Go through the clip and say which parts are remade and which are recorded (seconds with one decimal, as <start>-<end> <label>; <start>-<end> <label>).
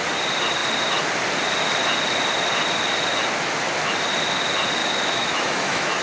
0.0-4.8 recorded; 4.8-6.0 remade